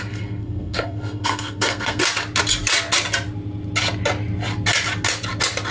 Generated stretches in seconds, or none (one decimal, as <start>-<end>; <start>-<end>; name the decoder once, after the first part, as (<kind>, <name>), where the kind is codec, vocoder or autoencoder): 0.0-2.0 (codec, SNAC)